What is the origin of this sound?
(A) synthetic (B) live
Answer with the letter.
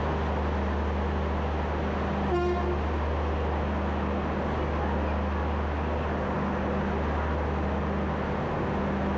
B